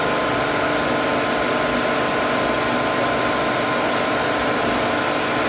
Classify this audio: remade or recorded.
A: recorded